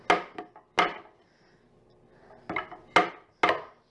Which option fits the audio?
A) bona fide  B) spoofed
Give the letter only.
A